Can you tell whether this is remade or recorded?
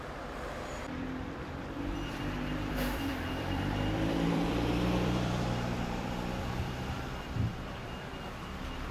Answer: remade